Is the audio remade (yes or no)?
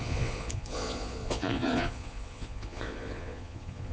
yes